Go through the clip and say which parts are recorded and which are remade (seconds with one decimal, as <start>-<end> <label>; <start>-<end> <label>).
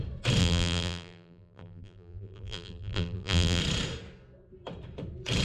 0.0-0.4 recorded; 0.4-3.6 remade; 3.6-5.4 recorded